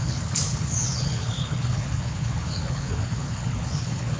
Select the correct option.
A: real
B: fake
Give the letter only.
B